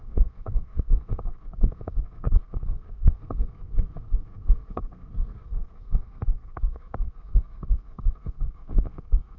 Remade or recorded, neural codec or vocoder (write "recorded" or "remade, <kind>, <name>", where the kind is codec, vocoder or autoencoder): remade, codec, SNAC